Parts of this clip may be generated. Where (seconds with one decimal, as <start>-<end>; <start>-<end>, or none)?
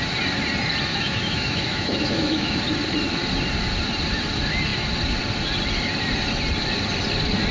0.9-2.6